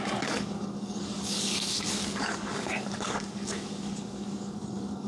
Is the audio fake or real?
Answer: fake